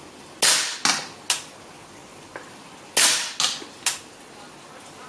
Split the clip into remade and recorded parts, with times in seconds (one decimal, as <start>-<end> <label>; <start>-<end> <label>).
0.0-5.1 recorded